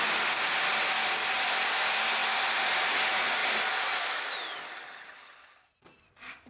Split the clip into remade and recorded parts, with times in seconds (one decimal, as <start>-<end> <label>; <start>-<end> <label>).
0.0-6.5 recorded